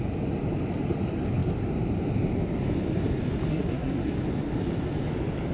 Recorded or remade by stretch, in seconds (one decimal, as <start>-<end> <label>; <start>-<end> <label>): 0.0-3.5 recorded; 3.5-4.1 remade; 4.1-5.5 recorded